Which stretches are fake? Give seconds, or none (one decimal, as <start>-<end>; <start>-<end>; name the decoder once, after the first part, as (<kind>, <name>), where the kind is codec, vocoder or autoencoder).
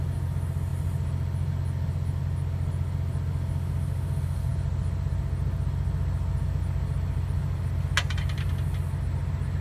none